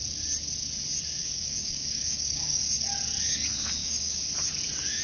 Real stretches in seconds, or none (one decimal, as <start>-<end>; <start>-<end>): 0.0-1.2; 2.6-3.8; 4.3-5.0